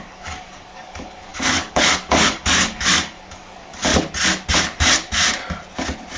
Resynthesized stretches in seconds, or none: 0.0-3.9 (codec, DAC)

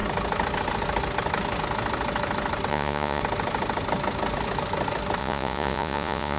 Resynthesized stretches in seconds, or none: 2.7-3.2 (vocoder, Vocos); 5.2-6.4